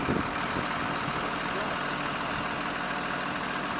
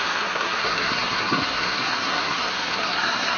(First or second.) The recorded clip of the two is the first